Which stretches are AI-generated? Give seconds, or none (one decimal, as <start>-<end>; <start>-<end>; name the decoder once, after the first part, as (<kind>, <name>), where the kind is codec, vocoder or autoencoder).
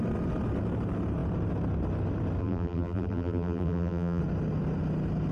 2.4-4.2 (vocoder, BigVGAN v2)